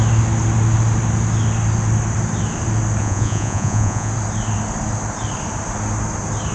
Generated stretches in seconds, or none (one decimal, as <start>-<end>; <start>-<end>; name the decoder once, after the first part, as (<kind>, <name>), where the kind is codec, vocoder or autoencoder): 3.0-4.1 (vocoder, Vocos)